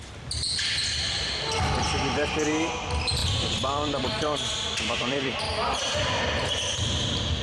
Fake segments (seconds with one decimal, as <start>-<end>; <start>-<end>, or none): 3.2-6.2